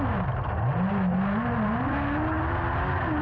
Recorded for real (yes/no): yes